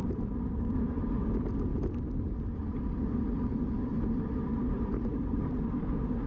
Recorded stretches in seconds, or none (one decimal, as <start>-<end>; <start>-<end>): 0.9-1.7; 5.5-6.3